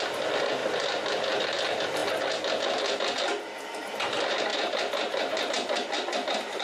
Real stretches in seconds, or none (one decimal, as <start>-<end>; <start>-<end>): 0.0-6.6